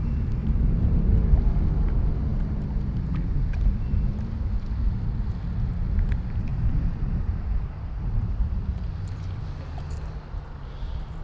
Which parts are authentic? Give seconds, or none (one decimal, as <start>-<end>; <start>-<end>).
0.0-0.4; 1.0-6.5; 8.9-11.2